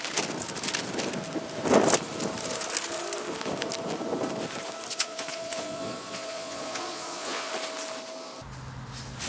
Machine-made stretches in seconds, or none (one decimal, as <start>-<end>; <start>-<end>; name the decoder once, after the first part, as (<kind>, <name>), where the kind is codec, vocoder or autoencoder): 4.9-7.5 (vocoder, Vocos)